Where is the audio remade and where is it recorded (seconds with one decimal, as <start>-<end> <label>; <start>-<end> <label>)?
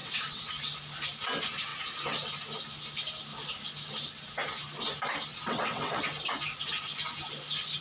0.0-0.5 remade; 0.5-5.3 recorded; 5.3-6.0 remade; 6.0-7.8 recorded